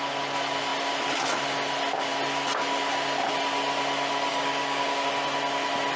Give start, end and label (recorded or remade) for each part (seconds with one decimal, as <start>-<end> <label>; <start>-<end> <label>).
0.0-4.3 recorded; 4.3-5.1 remade; 5.1-6.0 recorded